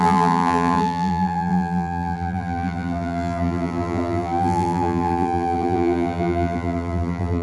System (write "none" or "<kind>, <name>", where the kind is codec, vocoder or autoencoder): vocoder, BigVGAN v2